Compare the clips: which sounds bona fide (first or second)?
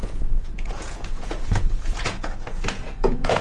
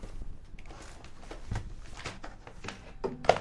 second